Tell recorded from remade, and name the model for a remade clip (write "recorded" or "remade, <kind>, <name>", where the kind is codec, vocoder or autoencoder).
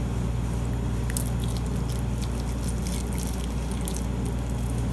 recorded